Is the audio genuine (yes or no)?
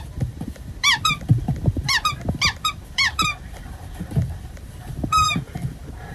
no